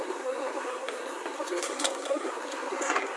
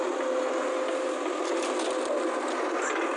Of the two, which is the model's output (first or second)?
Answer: first